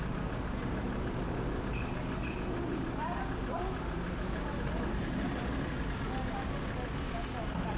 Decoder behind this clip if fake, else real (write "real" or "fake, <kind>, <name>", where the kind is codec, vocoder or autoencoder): real